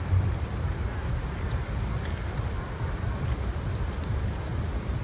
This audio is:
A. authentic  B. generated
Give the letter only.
A